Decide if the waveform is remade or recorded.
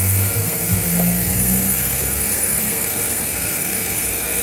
remade